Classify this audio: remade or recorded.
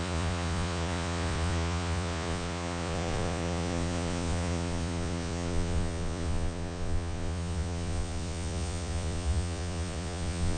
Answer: remade